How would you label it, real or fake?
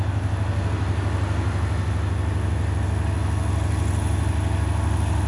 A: real